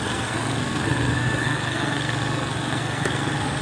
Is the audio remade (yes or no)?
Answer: yes